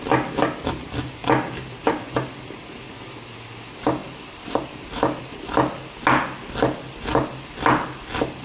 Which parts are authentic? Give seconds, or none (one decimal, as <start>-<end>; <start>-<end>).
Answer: 0.0-8.4